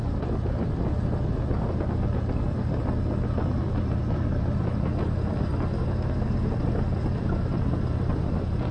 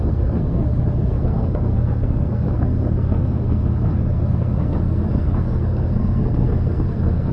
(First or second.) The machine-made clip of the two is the second